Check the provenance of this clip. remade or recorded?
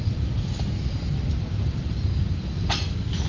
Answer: recorded